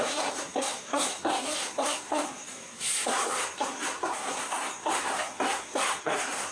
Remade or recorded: remade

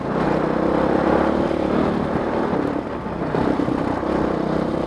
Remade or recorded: recorded